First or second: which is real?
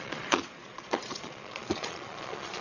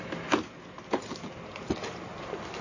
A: second